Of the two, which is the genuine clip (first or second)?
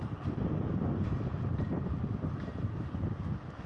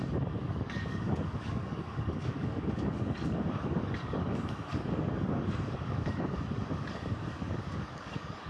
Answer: first